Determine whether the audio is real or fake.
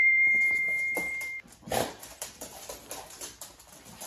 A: fake